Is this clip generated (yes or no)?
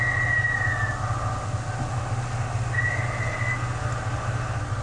no